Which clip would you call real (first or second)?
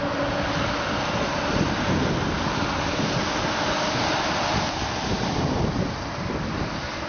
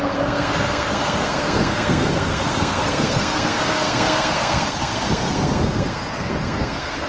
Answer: first